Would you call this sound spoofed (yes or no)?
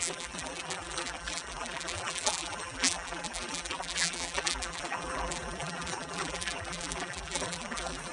yes